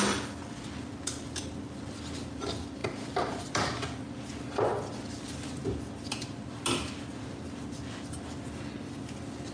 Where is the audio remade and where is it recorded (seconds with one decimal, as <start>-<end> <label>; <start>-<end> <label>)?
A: 0.0-2.8 recorded; 2.8-3.4 remade; 3.4-9.5 recorded